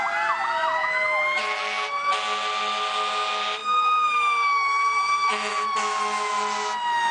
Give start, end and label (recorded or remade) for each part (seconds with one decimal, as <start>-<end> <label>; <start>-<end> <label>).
0.0-0.8 recorded; 0.8-1.4 remade; 1.4-3.6 recorded; 3.6-5.5 remade; 5.5-7.1 recorded